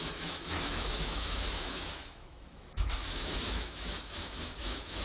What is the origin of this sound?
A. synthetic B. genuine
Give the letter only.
A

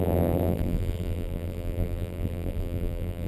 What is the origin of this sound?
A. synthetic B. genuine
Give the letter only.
A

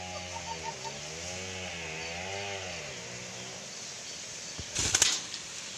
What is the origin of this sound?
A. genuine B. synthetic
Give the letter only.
A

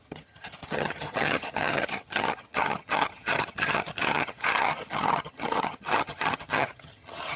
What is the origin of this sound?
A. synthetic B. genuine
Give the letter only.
A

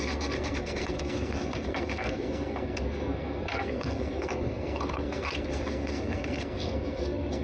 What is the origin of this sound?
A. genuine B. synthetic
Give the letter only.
B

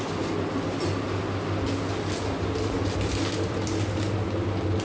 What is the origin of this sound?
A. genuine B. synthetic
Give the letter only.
A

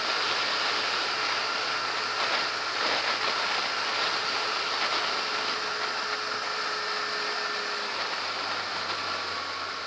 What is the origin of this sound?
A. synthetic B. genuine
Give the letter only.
B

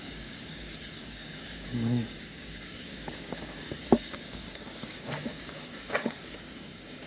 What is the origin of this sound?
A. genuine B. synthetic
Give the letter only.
B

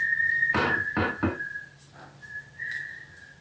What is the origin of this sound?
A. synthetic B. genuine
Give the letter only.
B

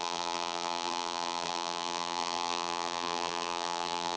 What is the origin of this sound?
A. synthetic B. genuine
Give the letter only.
A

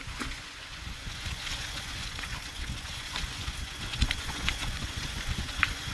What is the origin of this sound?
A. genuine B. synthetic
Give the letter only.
B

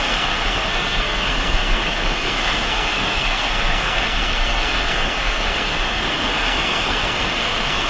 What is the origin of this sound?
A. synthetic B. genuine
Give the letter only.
A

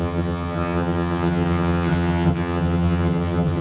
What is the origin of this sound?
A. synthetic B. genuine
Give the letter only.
A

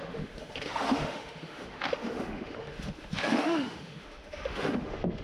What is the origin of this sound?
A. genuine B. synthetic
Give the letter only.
B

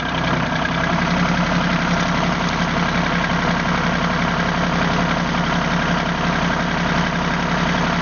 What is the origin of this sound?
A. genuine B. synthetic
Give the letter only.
A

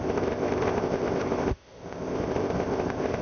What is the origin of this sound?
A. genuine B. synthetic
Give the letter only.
B